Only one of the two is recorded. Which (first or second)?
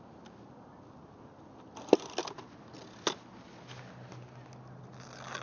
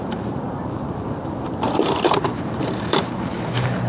first